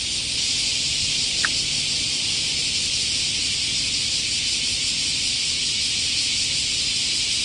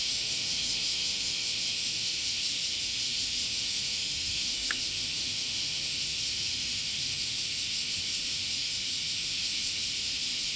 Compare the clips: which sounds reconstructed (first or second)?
second